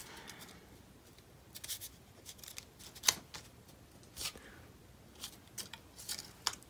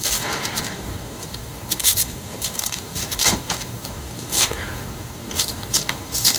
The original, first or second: first